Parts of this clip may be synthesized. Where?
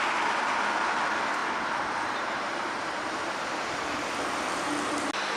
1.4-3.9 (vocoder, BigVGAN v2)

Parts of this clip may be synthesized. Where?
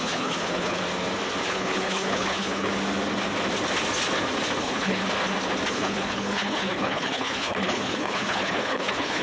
0.0-0.8 (codec, HILCodec); 1.5-2.7; 4.6-5.0; 5.7-9.2